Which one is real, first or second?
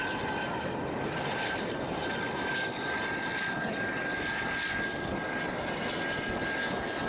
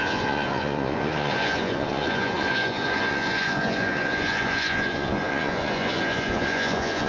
first